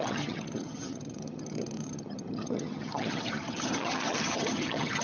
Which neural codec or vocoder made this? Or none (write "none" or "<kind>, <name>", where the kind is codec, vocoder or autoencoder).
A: vocoder, HiFi-GAN